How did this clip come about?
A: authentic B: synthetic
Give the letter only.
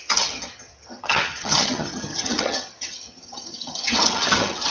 B